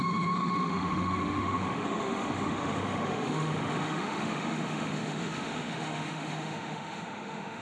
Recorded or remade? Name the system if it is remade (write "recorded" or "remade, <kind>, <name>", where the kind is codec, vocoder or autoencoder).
remade, autoencoder, DAC-VAE